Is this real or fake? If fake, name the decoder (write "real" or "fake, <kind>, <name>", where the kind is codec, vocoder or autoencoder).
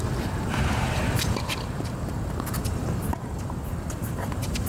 fake, vocoder, BigVGAN v2